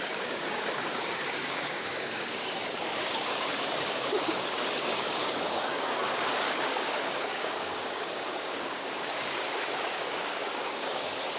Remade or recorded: remade